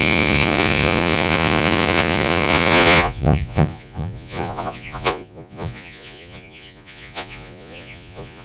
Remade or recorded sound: remade